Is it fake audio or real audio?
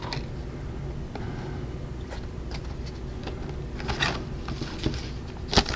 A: real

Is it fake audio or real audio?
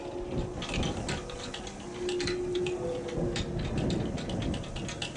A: real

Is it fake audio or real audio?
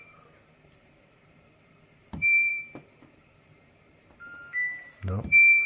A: fake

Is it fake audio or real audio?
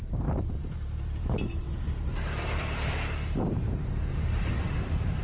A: fake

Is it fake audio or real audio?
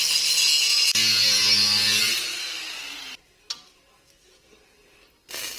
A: real